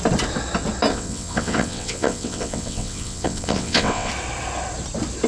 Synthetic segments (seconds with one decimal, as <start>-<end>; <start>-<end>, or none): 0.9-4.1